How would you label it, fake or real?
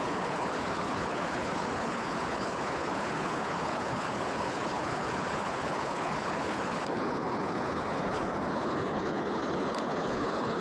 fake